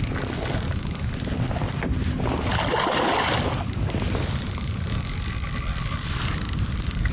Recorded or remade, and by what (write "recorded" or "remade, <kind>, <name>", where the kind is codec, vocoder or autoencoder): recorded